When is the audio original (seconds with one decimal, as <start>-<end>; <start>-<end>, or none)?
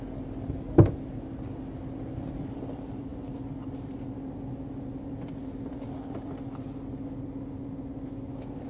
0.0-8.7